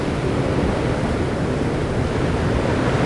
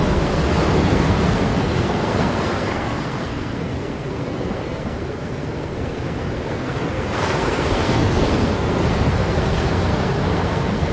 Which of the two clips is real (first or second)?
first